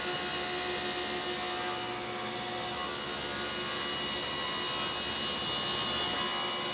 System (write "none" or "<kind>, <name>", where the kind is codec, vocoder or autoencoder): none